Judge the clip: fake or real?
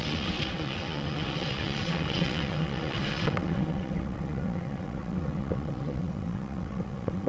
fake